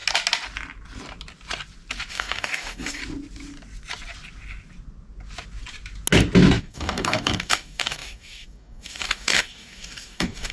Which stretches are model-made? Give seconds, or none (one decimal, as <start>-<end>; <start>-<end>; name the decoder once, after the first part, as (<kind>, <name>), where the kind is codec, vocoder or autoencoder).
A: 2.1-3.0 (codec, DAC); 6.6-10.5